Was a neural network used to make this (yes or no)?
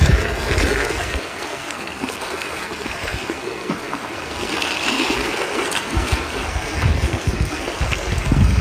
yes